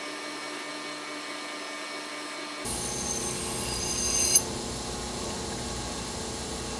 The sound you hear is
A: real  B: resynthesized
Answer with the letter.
A